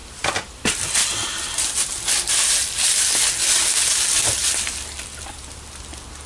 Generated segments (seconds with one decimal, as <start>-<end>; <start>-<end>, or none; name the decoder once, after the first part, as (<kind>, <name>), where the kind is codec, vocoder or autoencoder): none